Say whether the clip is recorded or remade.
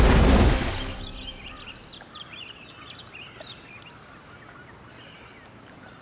recorded